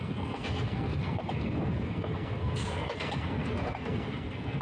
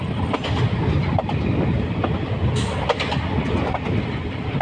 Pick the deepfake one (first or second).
first